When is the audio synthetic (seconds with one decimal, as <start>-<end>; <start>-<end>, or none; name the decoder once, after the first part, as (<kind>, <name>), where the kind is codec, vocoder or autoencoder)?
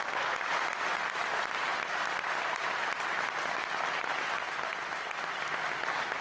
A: none